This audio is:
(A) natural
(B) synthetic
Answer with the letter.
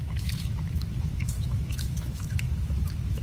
B